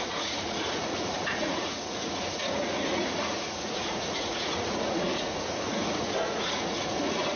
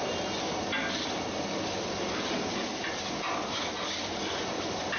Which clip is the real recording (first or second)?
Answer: second